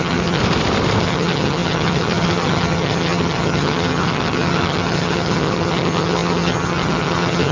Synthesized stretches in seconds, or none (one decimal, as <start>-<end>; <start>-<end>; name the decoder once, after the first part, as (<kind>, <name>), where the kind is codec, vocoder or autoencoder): 0.0-0.4 (vocoder, HiFi-GAN); 1.0-7.5